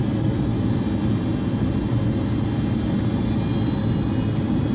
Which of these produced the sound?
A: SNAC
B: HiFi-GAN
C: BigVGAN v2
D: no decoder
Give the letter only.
D